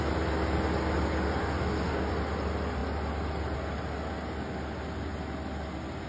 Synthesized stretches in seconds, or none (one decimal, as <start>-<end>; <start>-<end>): 1.4-2.1